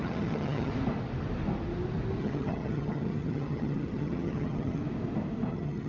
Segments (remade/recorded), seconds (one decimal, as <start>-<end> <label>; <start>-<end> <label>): 0.0-0.7 remade; 0.7-2.2 recorded; 2.2-4.8 remade; 4.8-5.5 recorded; 5.5-5.9 remade